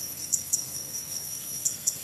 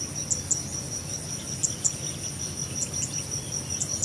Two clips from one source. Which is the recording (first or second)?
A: second